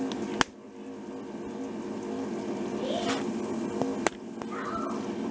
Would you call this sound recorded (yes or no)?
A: yes